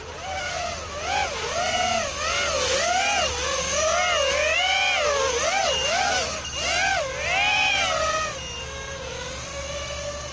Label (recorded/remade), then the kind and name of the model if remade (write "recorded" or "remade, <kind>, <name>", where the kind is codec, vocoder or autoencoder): recorded